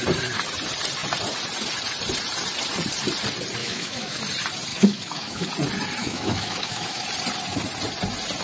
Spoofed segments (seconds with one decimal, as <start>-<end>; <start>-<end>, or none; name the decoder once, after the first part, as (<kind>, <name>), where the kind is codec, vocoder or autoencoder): 3.6-4.2 (autoencoder, DAC-VAE); 4.7-5.5; 6.0-7.0